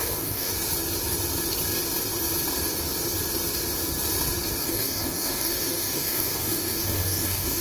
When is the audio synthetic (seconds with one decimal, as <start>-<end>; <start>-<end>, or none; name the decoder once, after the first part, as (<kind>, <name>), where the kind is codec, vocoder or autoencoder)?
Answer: 0.0-0.5 (codec, DAC); 4.6-7.6